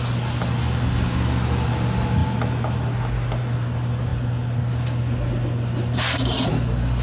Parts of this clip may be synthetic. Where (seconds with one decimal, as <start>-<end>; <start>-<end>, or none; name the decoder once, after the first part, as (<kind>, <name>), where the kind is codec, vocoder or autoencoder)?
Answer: none